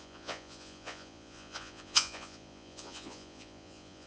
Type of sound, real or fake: fake